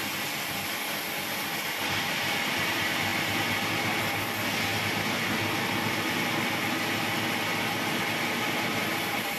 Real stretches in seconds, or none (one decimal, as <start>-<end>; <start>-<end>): 0.0-9.4

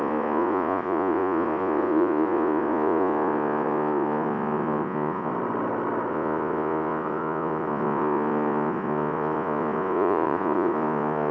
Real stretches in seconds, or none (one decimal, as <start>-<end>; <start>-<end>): 5.3-6.1